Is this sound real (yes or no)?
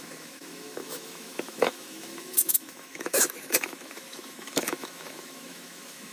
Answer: no